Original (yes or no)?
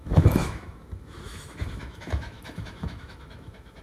no